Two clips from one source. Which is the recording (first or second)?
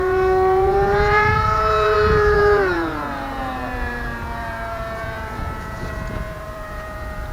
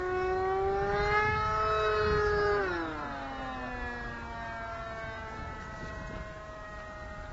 second